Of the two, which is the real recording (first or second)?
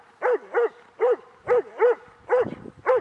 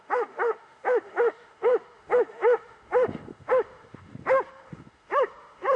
first